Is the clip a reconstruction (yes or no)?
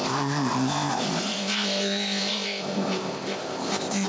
yes